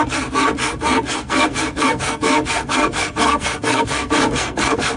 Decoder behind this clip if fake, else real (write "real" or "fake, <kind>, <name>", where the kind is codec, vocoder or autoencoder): fake, codec, SNAC